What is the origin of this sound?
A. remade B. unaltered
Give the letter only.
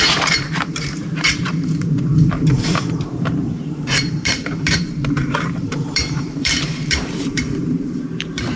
A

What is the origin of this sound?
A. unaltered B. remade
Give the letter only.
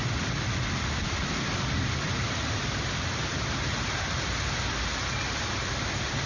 A